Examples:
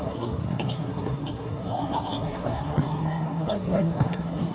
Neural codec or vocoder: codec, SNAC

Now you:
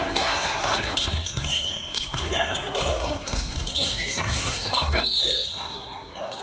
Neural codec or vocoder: codec, SNAC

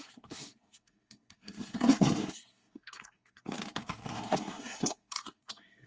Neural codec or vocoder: codec, SNAC